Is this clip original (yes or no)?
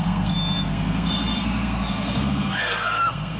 no